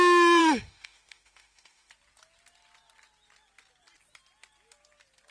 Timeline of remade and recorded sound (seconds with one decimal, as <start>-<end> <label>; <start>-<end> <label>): 0.0-0.4 recorded; 0.4-1.9 remade; 1.9-5.3 recorded